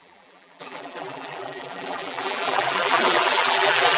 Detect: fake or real fake